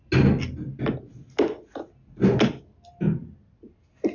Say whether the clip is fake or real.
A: real